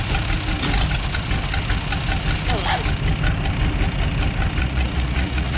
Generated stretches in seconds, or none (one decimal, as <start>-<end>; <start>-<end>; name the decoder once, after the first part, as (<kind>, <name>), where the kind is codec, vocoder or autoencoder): 4.6-5.6 (vocoder, Vocos)